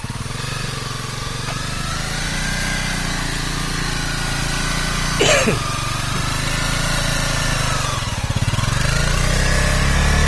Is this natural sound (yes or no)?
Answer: yes